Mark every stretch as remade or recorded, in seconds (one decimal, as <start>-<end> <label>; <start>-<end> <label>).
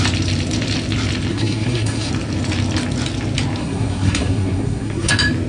0.0-1.3 recorded; 1.3-2.1 remade; 2.1-3.6 recorded; 3.6-5.1 remade; 5.1-5.5 recorded